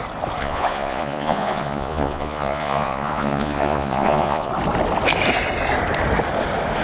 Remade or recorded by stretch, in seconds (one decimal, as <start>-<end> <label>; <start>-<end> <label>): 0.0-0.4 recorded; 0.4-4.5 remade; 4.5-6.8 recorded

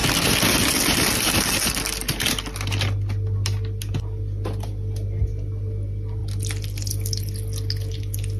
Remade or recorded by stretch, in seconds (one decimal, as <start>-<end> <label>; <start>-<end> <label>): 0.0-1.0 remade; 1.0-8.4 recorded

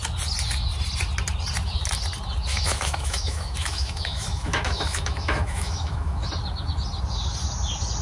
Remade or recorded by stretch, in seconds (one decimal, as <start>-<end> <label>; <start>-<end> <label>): 0.0-2.5 recorded; 2.5-6.3 remade; 6.3-8.0 recorded

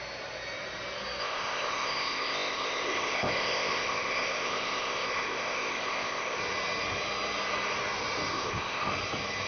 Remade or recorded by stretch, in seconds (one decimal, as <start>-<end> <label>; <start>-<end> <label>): 0.0-1.2 recorded; 1.2-6.4 remade; 6.4-8.3 recorded; 8.3-8.9 remade; 8.9-9.5 recorded

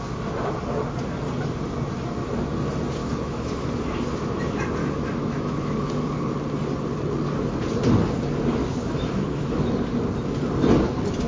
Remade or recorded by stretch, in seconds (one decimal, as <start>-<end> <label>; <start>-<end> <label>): 0.0-3.0 recorded; 3.0-3.7 remade; 3.7-4.8 recorded; 4.8-5.9 remade; 5.9-8.6 recorded; 8.6-9.7 remade; 9.7-11.3 recorded